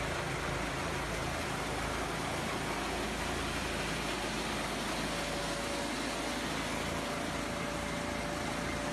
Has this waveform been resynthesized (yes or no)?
no